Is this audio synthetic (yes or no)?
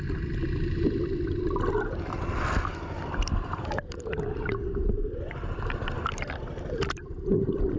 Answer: yes